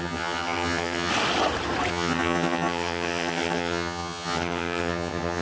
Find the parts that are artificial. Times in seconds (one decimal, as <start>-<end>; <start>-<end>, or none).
0.0-1.1; 1.9-5.4